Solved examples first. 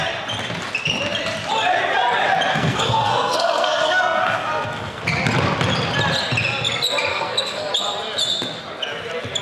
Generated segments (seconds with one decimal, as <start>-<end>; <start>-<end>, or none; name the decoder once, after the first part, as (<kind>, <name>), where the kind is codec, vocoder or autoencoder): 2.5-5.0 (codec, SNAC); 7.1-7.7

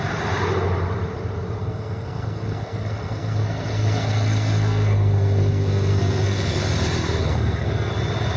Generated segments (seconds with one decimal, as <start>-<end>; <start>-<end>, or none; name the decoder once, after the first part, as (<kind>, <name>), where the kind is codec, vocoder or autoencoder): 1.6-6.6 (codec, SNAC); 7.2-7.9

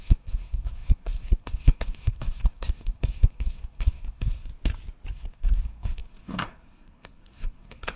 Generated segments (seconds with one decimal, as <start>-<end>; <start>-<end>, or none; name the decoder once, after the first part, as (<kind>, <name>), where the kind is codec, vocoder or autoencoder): 0.0-4.5 (codec, SNAC); 5.1-8.0